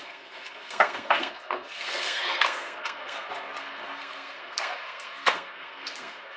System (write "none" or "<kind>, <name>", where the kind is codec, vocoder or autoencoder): codec, SNAC